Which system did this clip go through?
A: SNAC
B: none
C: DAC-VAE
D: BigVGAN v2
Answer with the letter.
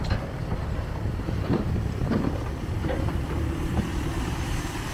D